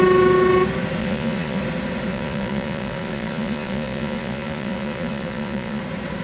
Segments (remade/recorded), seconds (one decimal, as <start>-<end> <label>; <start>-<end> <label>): 0.0-1.0 recorded; 1.0-1.6 remade; 1.6-2.1 recorded; 2.1-5.8 remade; 5.8-6.2 recorded